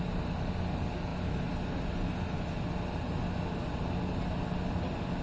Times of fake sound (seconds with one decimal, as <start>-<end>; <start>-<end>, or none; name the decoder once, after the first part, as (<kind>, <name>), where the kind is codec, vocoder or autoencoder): none